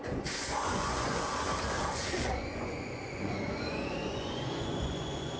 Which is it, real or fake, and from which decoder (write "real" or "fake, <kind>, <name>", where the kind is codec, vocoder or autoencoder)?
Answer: fake, vocoder, Vocos